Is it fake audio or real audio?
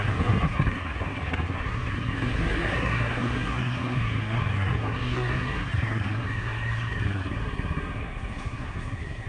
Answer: fake